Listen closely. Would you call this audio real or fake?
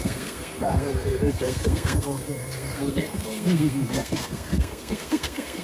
fake